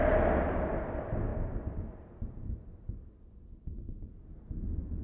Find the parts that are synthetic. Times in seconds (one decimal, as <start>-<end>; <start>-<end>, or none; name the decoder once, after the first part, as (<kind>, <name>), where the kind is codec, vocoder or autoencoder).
none